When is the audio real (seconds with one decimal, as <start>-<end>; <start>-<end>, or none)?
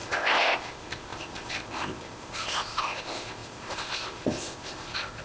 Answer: none